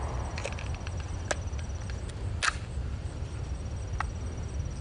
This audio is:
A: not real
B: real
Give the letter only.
B